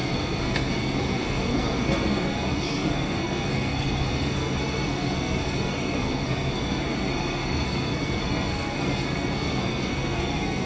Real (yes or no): no